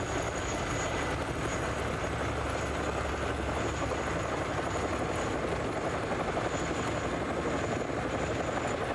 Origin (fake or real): real